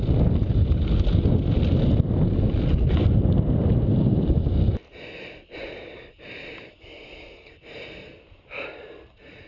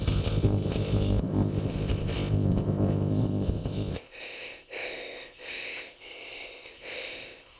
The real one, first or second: first